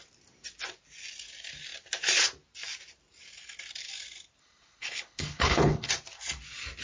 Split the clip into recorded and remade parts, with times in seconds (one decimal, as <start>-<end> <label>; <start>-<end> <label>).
0.0-4.4 recorded; 4.4-5.9 remade; 5.9-6.8 recorded